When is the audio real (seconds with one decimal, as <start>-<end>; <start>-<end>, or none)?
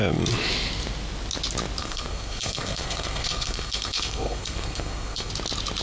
0.0-1.8; 5.3-5.8